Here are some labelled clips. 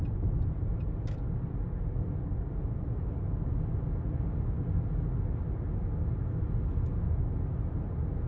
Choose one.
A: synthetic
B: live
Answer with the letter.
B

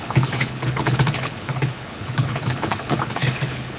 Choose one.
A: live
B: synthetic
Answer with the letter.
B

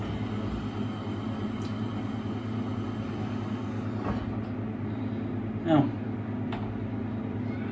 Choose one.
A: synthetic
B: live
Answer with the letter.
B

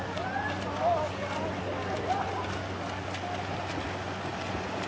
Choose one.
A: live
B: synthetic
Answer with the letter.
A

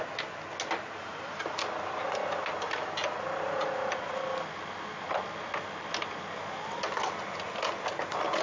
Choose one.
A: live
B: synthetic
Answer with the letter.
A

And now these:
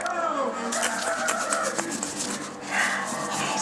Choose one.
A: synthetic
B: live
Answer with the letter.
B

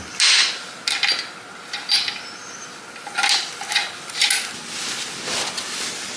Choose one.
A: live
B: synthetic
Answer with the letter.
A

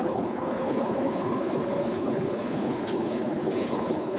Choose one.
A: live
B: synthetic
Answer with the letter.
B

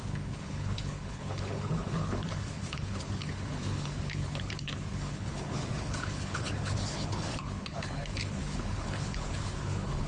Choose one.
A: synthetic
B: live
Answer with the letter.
A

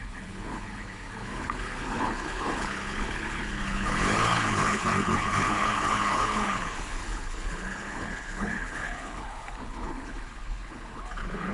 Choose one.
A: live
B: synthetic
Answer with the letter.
B